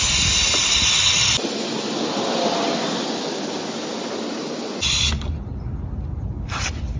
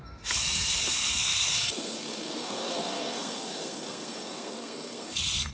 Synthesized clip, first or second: second